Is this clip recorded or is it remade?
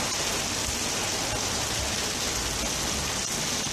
recorded